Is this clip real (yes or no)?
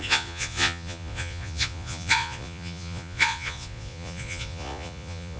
no